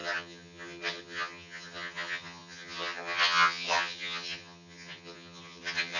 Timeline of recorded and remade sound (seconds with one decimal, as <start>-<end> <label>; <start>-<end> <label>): 0.0-6.0 remade